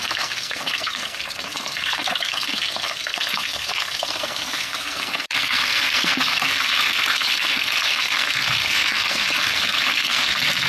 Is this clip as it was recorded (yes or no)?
no